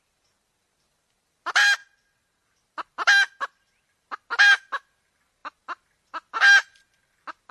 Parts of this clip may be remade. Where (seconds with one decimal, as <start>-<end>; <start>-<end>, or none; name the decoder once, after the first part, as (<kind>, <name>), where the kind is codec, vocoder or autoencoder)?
none